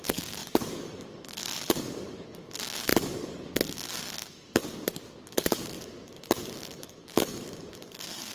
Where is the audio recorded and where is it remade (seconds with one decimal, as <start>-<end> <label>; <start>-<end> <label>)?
0.0-4.6 remade; 4.6-5.3 recorded; 5.3-8.3 remade